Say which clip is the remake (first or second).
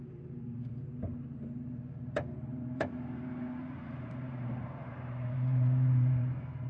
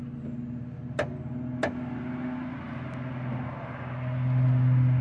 first